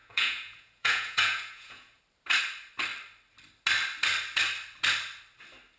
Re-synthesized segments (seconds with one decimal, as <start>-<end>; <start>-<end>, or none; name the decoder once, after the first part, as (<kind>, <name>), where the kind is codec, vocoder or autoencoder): 0.0-2.0 (vocoder, Vocos)